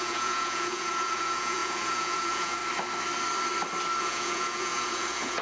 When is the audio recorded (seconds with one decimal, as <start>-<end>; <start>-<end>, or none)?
2.6-4.0